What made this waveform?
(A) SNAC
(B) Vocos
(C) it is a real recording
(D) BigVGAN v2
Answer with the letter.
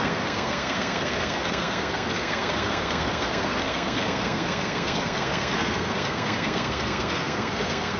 A